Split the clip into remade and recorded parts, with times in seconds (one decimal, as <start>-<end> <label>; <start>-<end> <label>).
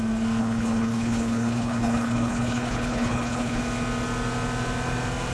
0.0-0.4 recorded; 0.4-3.6 remade; 3.6-5.3 recorded